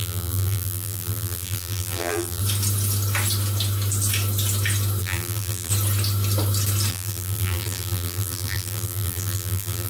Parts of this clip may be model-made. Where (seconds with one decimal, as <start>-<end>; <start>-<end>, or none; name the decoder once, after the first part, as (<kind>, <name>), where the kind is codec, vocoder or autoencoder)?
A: 0.0-2.4 (vocoder, BigVGAN v2); 5.0-5.7; 6.9-9.9